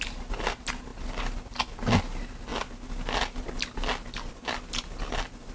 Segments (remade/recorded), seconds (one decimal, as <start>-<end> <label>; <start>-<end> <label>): 0.0-5.5 recorded